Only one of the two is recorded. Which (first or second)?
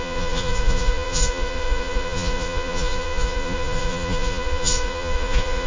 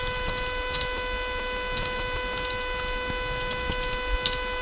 second